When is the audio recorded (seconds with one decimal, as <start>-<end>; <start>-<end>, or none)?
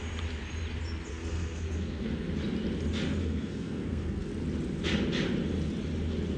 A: 0.0-1.1; 2.3-3.2; 4.3-6.4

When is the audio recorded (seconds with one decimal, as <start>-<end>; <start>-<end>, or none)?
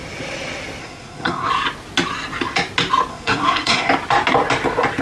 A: 0.0-0.8; 1.5-3.1; 3.9-5.0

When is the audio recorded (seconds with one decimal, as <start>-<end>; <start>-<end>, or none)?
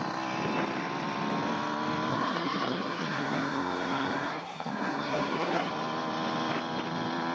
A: 0.0-2.1; 5.7-7.3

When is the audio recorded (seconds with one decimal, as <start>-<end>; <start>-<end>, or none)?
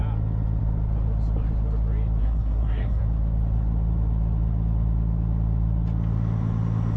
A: 0.0-2.2; 3.0-7.0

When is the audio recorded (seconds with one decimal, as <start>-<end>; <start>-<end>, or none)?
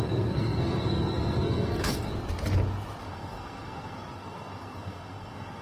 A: 2.1-3.0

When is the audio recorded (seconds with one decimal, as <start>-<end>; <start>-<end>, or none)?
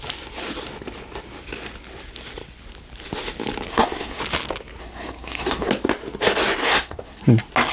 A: 0.0-3.7; 4.2-4.8; 5.7-6.6; 7.2-7.7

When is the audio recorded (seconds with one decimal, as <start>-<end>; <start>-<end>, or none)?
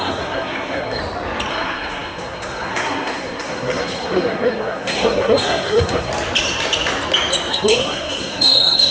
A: 1.0-1.5; 6.1-7.5